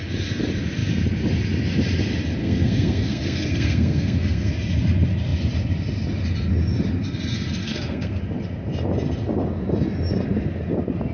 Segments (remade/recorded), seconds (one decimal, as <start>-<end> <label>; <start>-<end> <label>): 0.0-2.4 recorded; 2.4-4.5 remade; 4.5-7.6 recorded; 7.6-8.2 remade; 8.2-11.1 recorded